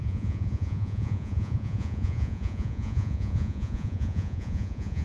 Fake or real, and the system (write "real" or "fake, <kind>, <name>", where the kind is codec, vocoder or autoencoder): fake, vocoder, Vocos